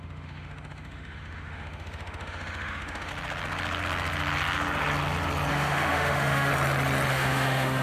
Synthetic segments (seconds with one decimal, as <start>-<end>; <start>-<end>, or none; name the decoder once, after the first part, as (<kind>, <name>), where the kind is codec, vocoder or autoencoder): 0.0-3.1 (autoencoder, DAC-VAE); 5.5-6.5; 7.1-7.8